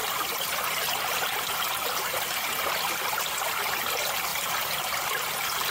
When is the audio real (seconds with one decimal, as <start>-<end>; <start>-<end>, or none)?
0.0-5.7